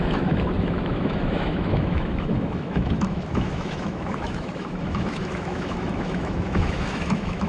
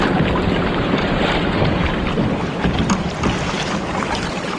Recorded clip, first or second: second